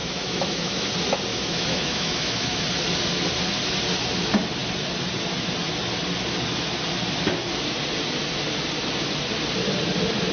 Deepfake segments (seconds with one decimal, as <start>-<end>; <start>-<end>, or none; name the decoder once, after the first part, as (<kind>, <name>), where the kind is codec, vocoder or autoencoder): 0.0-0.9 (autoencoder, DAC-VAE); 1.3-2.6